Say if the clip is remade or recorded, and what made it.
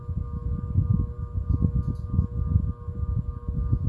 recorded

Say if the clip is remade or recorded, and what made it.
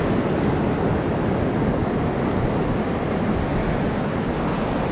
recorded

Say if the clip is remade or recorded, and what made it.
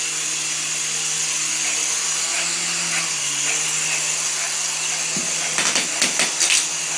recorded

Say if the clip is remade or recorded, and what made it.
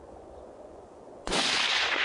remade, vocoder, Vocos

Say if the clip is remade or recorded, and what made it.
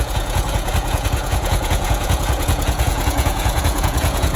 remade, vocoder, Vocos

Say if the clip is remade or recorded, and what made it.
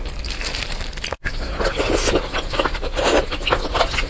recorded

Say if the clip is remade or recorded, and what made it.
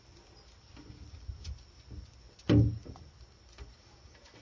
recorded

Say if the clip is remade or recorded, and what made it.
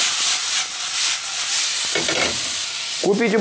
recorded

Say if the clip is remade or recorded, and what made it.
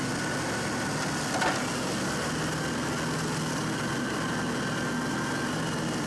recorded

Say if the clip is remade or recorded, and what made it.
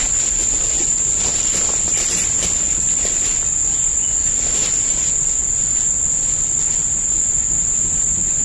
recorded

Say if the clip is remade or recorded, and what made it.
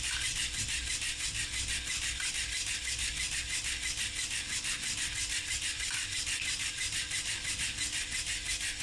recorded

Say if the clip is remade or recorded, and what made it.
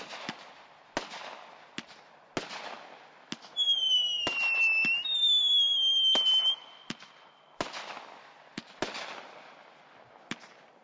recorded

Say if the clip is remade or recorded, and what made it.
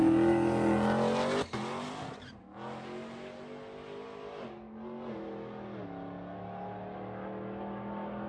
recorded